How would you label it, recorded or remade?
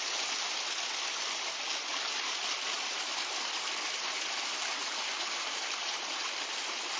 remade